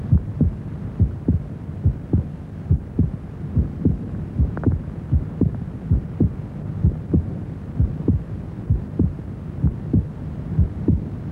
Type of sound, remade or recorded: recorded